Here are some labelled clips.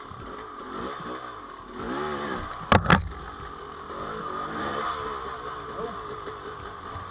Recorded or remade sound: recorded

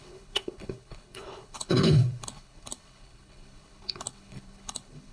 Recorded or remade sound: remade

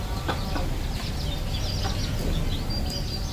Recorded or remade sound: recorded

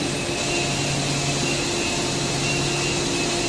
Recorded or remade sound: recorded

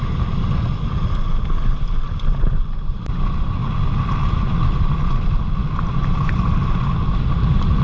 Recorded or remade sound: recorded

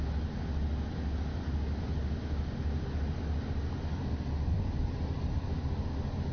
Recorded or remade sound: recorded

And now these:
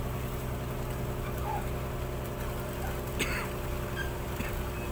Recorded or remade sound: recorded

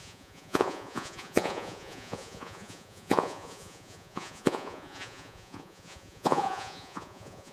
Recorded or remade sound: remade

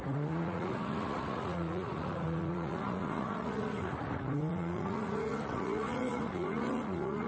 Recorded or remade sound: remade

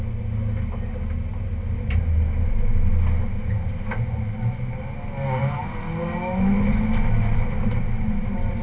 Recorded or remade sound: recorded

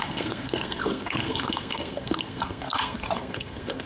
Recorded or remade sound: remade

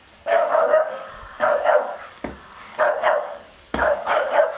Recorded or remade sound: remade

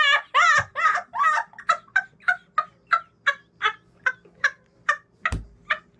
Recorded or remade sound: recorded